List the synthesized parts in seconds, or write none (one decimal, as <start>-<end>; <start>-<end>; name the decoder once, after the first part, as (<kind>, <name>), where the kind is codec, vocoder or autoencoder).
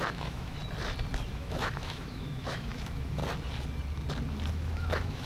0.0-0.6 (autoencoder, DAC-VAE); 1.3-3.2; 4.5-5.3